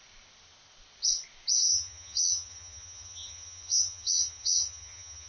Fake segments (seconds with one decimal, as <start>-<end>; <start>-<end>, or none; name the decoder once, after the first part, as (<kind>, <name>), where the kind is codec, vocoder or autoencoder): 1.7-5.3 (vocoder, HiFi-GAN)